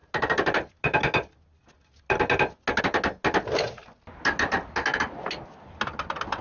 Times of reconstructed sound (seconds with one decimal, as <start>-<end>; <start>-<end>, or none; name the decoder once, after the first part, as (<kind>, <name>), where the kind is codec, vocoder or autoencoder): none